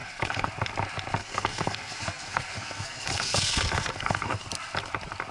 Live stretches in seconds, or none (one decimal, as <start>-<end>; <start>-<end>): 0.5-1.2; 4.4-5.3